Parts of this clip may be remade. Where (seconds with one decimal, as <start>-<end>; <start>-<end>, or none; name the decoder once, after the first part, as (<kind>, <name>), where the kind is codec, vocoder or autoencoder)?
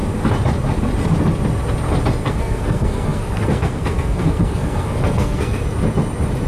2.2-5.6 (codec, SNAC)